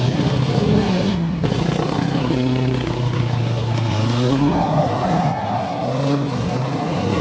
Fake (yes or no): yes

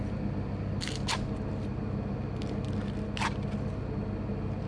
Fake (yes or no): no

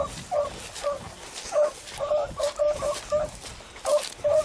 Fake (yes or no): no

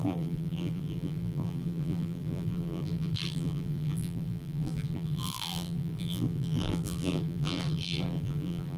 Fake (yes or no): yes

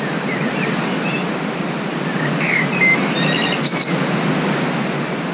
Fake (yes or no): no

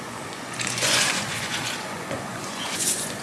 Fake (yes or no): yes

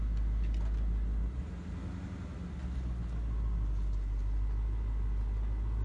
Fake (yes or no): no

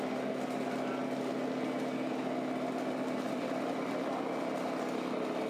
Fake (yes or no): no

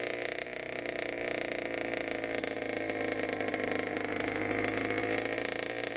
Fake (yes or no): no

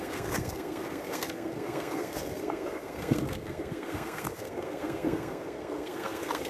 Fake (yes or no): yes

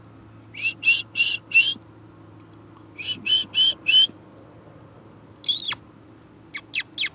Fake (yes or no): no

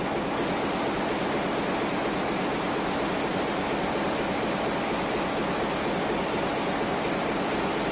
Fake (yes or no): no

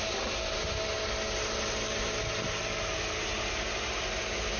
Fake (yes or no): no